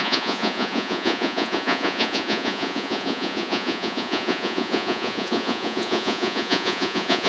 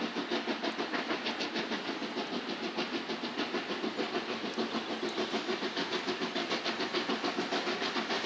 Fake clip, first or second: first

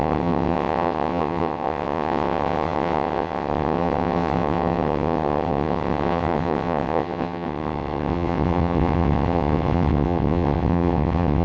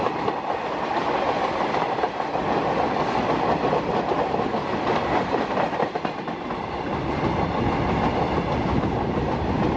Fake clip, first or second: first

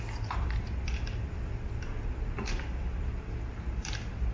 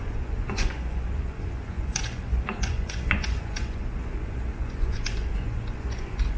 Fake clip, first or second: second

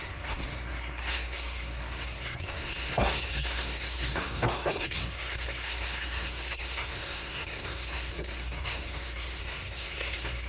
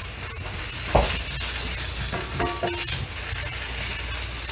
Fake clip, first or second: first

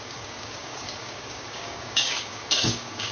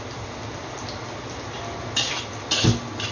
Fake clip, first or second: first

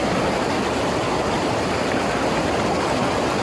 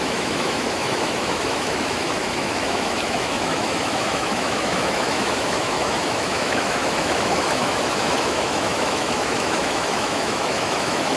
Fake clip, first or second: second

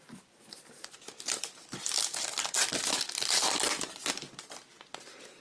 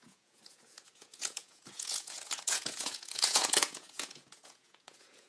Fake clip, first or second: second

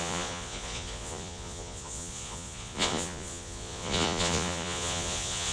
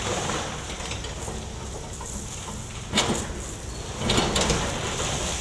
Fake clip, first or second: first